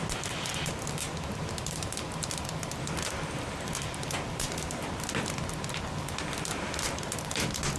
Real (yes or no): yes